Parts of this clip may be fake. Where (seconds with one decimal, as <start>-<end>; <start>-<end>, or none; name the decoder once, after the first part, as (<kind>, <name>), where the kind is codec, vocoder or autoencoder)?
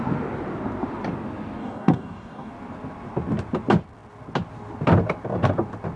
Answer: 1.6-2.5 (codec, DAC)